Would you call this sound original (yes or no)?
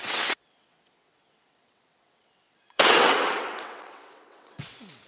no